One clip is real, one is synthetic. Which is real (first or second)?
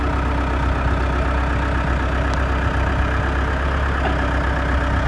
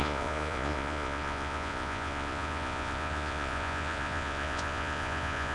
first